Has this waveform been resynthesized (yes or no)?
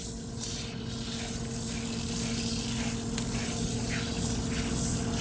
no